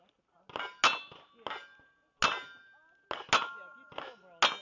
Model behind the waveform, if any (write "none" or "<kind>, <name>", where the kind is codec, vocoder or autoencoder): none